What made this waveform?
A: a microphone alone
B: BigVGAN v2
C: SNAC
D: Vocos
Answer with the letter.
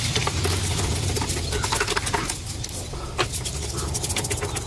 A